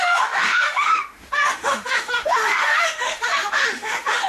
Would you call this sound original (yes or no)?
no